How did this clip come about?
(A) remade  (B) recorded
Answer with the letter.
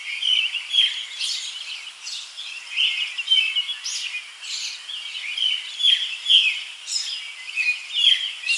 B